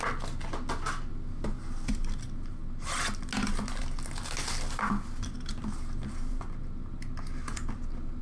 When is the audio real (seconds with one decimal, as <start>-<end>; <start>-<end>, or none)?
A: 0.0-8.2